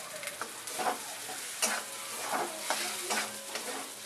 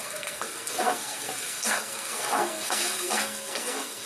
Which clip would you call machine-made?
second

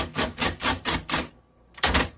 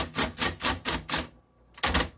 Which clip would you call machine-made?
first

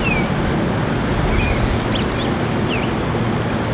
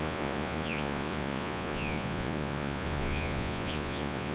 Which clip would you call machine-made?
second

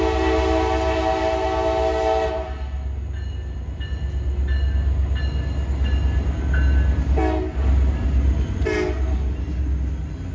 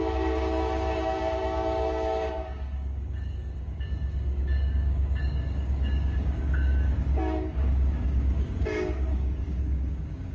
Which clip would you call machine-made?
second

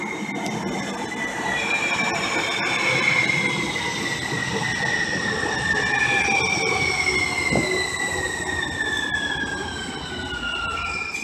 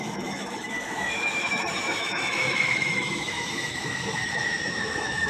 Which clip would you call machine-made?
second